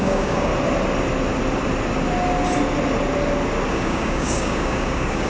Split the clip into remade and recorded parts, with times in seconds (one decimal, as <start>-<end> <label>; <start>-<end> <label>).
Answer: 0.0-0.5 remade; 0.5-3.7 recorded; 3.7-5.3 remade

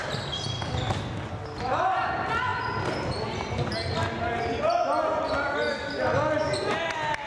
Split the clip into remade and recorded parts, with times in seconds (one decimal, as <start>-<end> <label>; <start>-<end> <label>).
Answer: 0.0-7.3 recorded

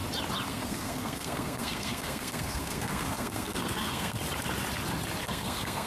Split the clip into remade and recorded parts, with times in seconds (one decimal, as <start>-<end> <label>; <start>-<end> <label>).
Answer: 0.0-0.5 recorded; 0.5-4.2 remade; 4.2-5.2 recorded; 5.2-5.9 remade

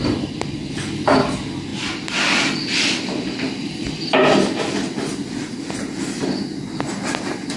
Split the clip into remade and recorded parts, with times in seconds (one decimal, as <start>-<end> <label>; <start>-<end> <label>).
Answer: 0.0-7.6 recorded

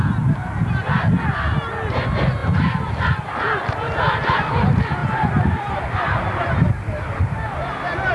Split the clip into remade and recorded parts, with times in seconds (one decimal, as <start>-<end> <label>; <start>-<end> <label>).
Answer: 0.0-2.4 recorded; 2.4-4.5 remade; 4.5-5.0 recorded; 5.0-5.7 remade; 5.7-8.1 recorded